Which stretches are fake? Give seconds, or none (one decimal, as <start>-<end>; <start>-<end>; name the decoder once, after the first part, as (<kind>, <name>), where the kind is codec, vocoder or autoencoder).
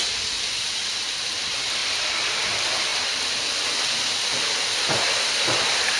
1.8-2.4 (vocoder, BigVGAN v2); 2.9-3.5